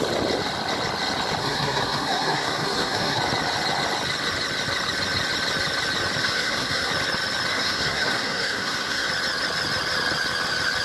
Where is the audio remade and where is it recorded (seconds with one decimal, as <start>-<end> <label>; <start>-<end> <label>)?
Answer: 0.0-1.4 recorded; 1.4-3.2 remade; 3.2-6.2 recorded; 6.2-6.9 remade; 6.9-7.5 recorded; 7.5-9.1 remade; 9.1-10.8 recorded